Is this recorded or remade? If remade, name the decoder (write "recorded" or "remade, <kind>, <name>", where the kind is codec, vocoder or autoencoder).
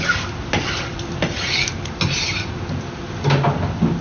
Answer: recorded